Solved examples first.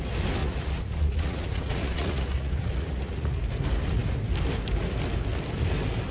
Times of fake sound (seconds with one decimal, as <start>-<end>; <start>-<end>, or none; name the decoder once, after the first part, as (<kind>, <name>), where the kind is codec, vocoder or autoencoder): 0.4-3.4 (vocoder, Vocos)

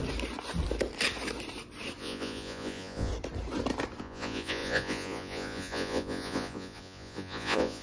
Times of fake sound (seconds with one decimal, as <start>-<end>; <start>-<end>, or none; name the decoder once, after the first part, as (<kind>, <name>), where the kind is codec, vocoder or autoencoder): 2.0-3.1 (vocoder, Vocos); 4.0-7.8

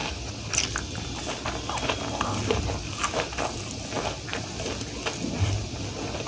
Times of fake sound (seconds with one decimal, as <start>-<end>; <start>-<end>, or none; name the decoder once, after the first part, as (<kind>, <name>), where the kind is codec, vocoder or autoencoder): none

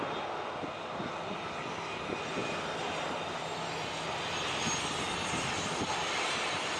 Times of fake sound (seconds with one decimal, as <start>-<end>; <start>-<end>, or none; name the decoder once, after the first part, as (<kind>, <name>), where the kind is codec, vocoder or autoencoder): none

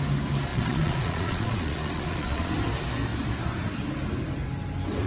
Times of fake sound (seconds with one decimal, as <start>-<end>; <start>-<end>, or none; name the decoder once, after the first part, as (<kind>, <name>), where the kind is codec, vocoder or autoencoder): 0.5-2.5 (vocoder, Vocos)

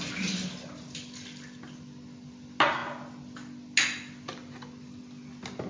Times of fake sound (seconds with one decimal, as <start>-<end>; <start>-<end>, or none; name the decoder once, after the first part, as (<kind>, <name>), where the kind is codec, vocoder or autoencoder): none

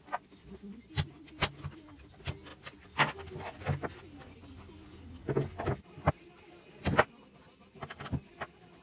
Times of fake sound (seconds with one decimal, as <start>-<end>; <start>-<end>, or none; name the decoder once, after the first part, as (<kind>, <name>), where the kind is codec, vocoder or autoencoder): none